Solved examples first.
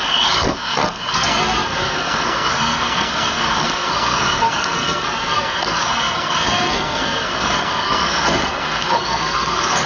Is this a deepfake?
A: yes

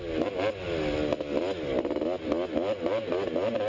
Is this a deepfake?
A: no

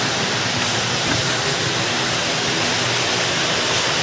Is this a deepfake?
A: no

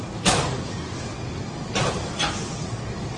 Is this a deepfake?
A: no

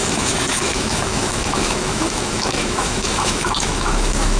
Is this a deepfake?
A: yes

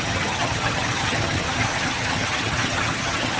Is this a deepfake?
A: yes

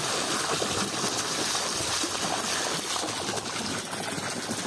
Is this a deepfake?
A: no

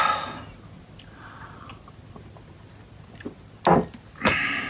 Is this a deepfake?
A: no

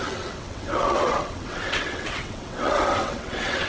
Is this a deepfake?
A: yes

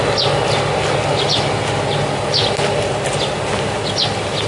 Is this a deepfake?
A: no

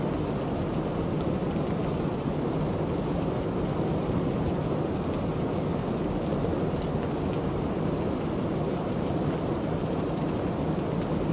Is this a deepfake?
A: no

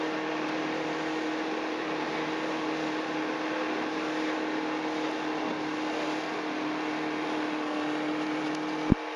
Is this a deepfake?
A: no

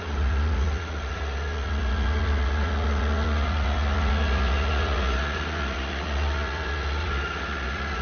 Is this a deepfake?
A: yes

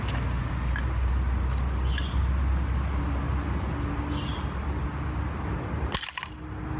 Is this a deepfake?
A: no